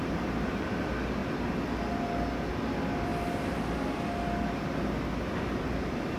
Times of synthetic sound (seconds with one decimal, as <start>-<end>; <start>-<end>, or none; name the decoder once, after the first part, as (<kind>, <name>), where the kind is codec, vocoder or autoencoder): 0.0-1.2 (vocoder, BigVGAN v2); 2.5-3.1; 4.5-6.2